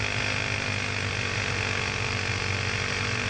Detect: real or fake real